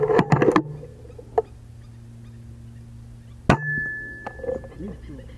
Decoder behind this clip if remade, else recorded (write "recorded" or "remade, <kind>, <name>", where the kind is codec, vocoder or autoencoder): recorded